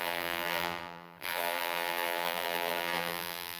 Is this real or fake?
fake